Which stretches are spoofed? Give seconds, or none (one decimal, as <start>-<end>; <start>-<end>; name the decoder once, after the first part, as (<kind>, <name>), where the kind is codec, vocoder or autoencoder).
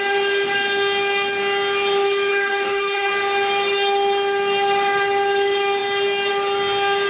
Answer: 2.3-3.1 (codec, DAC)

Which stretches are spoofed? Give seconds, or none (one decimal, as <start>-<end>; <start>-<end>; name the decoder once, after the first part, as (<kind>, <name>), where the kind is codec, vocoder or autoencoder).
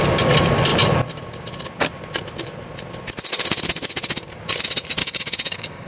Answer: 5.0-5.9 (codec, DAC)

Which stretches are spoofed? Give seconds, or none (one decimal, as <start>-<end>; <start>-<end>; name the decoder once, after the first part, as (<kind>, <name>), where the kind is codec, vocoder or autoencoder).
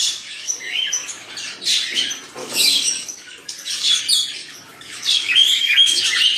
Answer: 0.0-1.3 (codec, DAC); 2.4-4.0; 4.4-6.0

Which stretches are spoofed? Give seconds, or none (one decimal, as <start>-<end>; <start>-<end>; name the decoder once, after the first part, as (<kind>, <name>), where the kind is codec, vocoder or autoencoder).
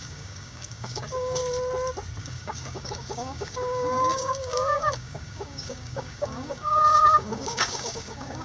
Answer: 0.0-1.4 (codec, DAC); 2.2-8.4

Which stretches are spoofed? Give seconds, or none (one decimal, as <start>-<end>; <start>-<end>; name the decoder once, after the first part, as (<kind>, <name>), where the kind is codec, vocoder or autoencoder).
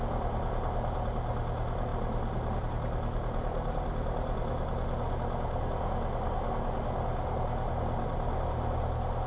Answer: none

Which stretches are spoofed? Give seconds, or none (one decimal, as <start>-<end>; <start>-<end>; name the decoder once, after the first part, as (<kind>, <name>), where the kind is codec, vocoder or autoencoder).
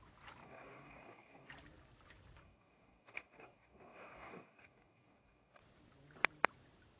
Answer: 0.4-1.5 (codec, DAC); 2.4-5.6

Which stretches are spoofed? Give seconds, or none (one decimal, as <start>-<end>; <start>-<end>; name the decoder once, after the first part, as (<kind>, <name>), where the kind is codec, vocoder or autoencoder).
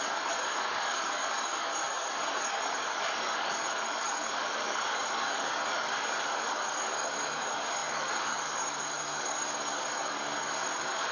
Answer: 0.0-11.1 (codec, DAC)